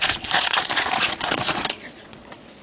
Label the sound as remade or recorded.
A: remade